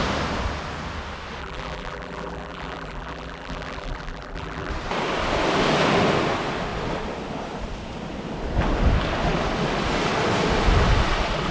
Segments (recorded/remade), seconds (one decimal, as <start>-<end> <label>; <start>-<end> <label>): 0.0-1.4 recorded; 1.4-4.7 remade; 4.7-11.5 recorded